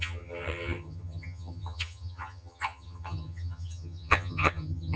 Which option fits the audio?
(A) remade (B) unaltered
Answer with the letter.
A